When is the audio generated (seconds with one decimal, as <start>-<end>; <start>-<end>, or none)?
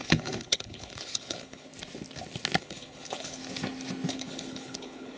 0.0-1.7; 2.6-3.4; 4.1-5.2